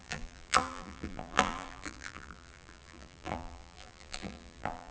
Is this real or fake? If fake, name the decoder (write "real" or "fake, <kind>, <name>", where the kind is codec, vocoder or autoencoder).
fake, vocoder, BigVGAN v2